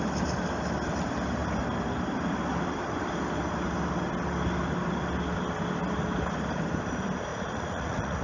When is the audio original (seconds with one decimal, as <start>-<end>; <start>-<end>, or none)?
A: 0.0-7.3